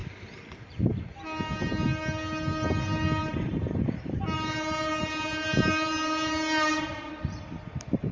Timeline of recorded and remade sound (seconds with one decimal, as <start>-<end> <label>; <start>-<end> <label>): 0.0-1.0 remade; 1.0-3.2 recorded; 3.2-7.1 remade; 7.1-8.1 recorded